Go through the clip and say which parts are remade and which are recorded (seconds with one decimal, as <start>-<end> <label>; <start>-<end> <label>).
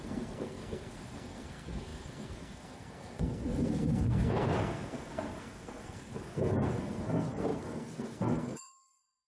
0.0-9.3 remade